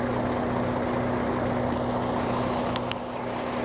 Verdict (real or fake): real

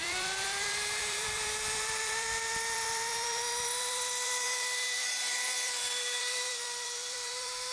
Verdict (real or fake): fake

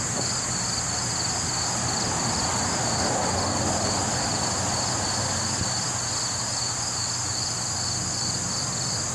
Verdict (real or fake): real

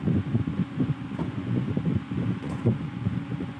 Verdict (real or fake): fake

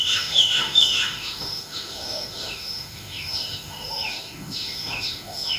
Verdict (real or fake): fake